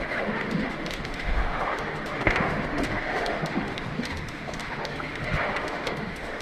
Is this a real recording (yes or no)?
no